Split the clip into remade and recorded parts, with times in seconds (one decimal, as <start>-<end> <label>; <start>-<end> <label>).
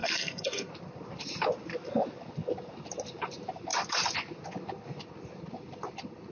0.0-0.7 remade; 0.7-6.3 recorded